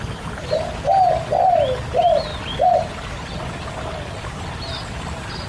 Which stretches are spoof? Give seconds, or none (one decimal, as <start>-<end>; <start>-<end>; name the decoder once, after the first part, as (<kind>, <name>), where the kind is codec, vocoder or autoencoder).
none